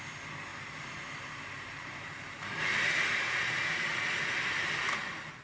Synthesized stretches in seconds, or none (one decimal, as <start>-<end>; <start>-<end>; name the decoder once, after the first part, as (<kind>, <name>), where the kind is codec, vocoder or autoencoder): 0.5-3.7 (vocoder, BigVGAN v2)